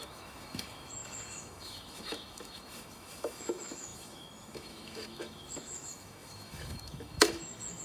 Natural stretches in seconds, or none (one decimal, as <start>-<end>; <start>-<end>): none